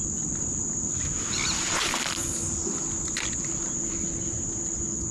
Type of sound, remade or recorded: recorded